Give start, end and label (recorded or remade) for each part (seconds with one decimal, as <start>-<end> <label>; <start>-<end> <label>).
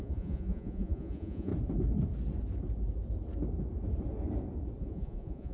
0.0-1.5 remade; 1.5-4.8 recorded; 4.8-5.5 remade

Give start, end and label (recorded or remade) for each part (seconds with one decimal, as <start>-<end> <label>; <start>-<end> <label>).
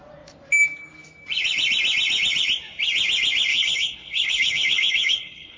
0.0-3.5 recorded; 3.5-5.6 remade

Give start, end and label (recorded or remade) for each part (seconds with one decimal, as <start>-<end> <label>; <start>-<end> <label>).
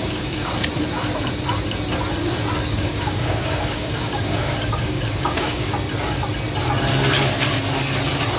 0.0-0.5 remade; 0.5-2.7 recorded; 2.7-5.7 remade; 5.7-8.4 recorded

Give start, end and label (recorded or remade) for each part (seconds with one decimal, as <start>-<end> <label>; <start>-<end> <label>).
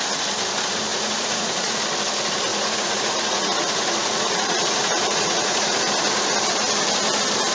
0.0-0.9 recorded; 0.9-1.8 remade; 1.8-2.5 recorded; 2.5-5.9 remade; 5.9-7.5 recorded